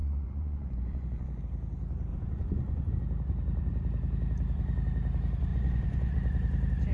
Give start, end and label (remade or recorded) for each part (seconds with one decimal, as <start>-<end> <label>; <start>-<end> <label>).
0.0-1.4 remade; 1.4-2.1 recorded; 2.1-2.9 remade; 2.9-5.5 recorded; 5.5-6.1 remade; 6.1-6.9 recorded